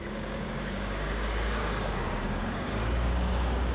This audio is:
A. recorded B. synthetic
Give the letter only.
B